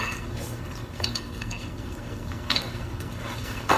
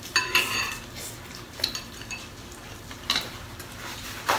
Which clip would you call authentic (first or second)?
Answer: second